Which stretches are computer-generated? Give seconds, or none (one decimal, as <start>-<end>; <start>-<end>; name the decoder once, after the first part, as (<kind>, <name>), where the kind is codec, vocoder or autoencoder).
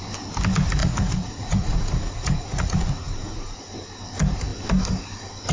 0.8-3.6 (vocoder, Vocos)